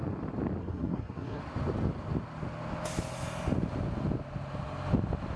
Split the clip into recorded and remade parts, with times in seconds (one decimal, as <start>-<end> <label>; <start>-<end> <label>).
0.0-0.6 recorded; 0.6-1.4 remade; 1.4-5.4 recorded